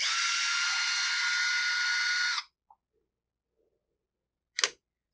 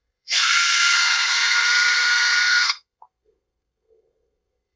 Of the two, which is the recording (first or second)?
first